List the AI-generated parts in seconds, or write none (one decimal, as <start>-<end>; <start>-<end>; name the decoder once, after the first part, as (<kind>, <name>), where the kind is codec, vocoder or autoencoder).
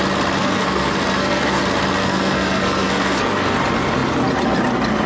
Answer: 0.4-1.6 (codec, SNAC); 2.0-3.6